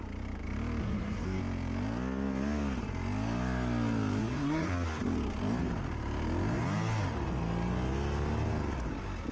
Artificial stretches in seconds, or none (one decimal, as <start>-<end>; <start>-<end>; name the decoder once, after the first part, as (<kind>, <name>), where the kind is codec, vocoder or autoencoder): 0.8-1.4 (codec, SNAC); 4.2-4.7